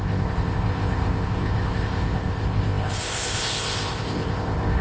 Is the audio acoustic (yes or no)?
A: no